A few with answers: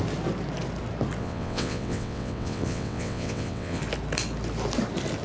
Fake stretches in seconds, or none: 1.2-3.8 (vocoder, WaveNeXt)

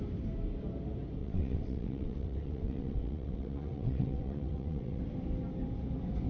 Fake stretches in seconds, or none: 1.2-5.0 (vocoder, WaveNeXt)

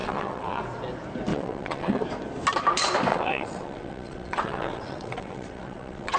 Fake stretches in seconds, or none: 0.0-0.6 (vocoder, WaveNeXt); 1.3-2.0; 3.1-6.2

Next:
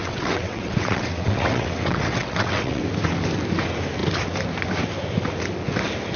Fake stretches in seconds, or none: 0.0-2.8 (vocoder, WaveNeXt)

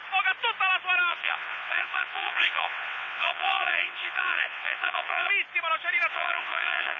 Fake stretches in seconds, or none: 1.1-5.3 (vocoder, WaveNeXt); 6.1-7.0

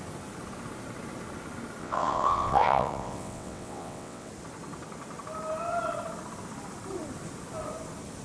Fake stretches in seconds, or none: 1.8-4.3 (vocoder, WaveNeXt)

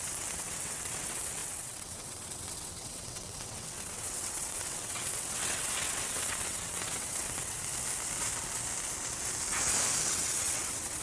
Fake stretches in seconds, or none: 0.0-7.7 (vocoder, WaveNeXt); 10.1-11.0

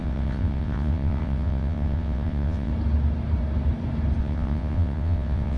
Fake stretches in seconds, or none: 0.0-2.7 (vocoder, WaveNeXt); 4.2-5.6